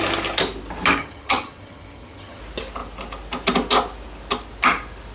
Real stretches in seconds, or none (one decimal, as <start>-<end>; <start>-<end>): 0.0-1.0; 2.4-5.1